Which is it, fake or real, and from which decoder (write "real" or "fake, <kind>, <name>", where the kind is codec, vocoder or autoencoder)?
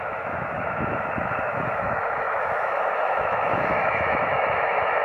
fake, autoencoder, DAC-VAE